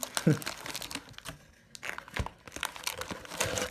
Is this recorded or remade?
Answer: recorded